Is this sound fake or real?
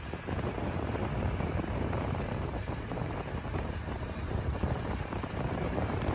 fake